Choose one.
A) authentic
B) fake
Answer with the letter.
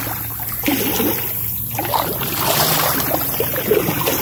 A